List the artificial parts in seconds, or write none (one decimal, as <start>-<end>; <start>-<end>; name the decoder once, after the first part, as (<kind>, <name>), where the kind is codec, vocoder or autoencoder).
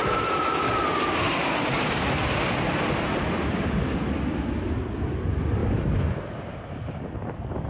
none